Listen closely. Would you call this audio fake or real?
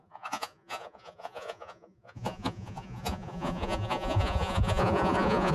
fake